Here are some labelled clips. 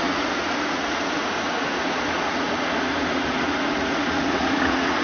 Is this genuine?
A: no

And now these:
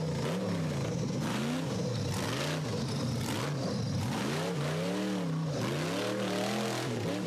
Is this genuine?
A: yes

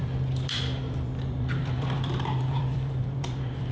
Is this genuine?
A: no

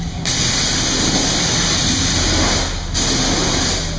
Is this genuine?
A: yes